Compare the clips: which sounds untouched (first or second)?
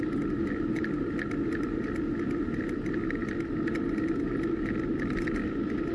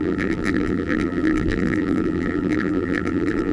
first